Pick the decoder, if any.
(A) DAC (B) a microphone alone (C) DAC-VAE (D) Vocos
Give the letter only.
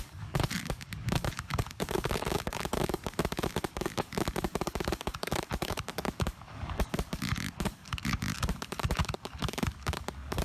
A